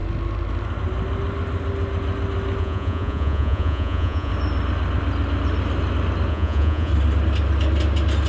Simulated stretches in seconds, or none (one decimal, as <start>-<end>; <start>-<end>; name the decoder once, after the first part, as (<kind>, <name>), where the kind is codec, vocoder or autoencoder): 2.6-4.3 (vocoder, Vocos); 6.3-6.9